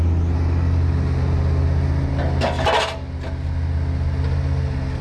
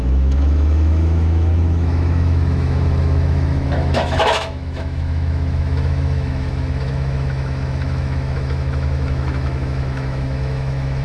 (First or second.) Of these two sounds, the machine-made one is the second